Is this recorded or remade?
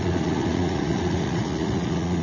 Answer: remade